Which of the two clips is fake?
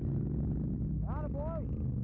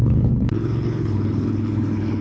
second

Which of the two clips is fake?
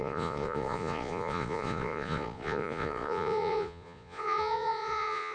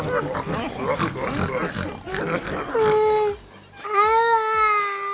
first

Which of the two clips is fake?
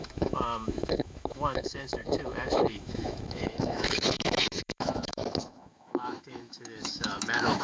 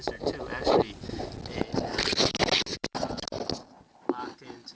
first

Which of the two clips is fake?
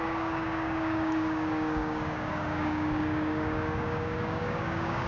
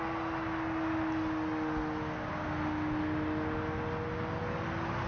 first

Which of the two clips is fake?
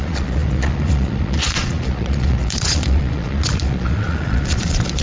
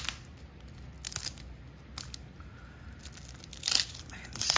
first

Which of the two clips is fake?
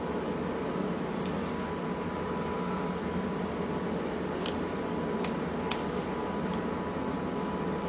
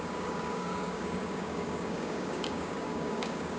second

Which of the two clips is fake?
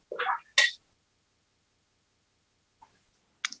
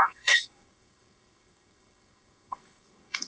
second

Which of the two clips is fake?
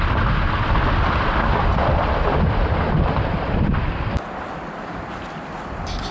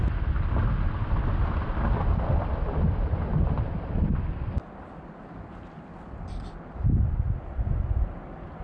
first